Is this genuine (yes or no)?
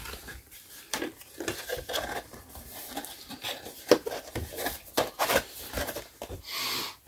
no